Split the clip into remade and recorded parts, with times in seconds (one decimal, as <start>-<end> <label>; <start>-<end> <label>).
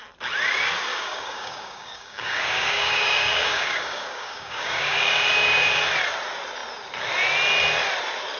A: 0.0-0.9 recorded; 0.9-5.8 remade; 5.8-8.4 recorded